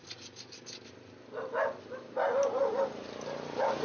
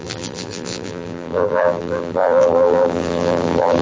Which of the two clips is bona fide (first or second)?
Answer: first